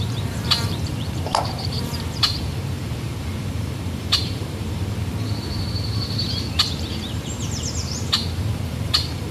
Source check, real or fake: fake